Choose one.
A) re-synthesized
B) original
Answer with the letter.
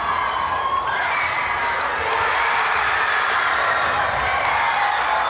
B